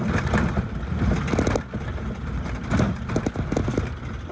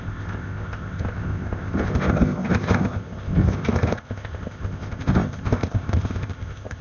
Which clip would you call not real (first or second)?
second